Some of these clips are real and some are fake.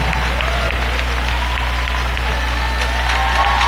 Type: real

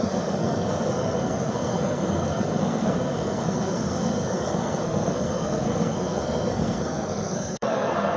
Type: fake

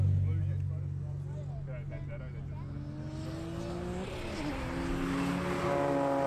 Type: real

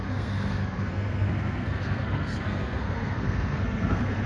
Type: fake